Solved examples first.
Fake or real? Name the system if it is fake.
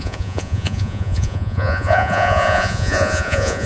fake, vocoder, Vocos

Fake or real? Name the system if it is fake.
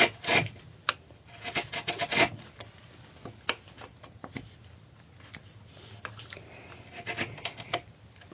real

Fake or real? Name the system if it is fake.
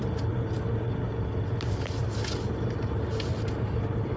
real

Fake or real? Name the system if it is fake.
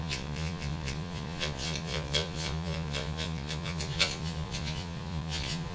fake, vocoder, Vocos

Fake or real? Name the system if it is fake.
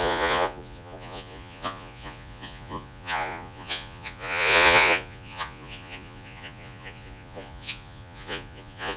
fake, vocoder, Vocos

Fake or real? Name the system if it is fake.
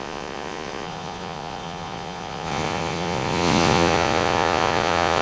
fake, vocoder, Vocos